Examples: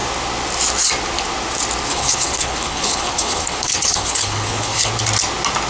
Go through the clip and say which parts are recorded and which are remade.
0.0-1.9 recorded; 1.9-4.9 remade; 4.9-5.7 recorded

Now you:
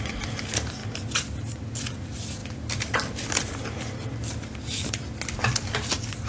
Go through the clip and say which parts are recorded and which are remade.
0.0-6.3 recorded

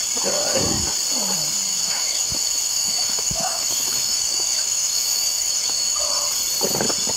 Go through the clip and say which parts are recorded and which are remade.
0.0-1.7 recorded; 1.7-6.0 remade; 6.0-7.2 recorded

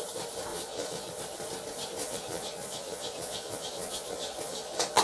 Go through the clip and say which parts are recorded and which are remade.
0.0-0.5 recorded; 0.5-1.1 remade; 1.1-2.0 recorded; 2.0-5.0 remade